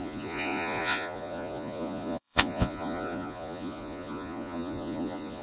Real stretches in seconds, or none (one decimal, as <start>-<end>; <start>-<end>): none